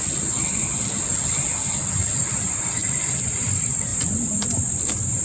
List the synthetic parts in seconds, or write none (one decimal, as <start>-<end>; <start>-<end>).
2.8-3.3; 3.9-4.6